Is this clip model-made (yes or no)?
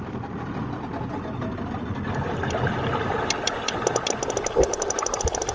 no